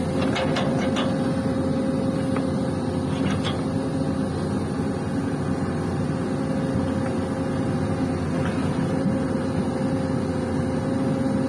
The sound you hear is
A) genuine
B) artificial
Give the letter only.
A